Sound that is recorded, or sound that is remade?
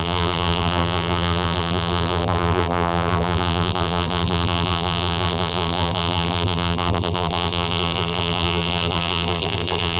remade